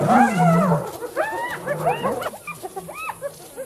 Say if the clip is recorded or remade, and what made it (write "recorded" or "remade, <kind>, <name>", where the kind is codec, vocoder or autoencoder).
recorded